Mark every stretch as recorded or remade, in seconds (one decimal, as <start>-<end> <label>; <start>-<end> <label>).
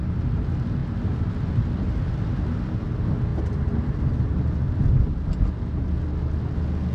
0.0-6.9 recorded